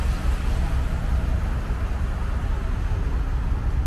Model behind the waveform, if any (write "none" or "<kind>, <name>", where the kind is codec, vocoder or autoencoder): none